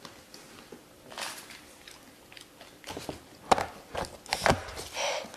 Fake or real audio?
real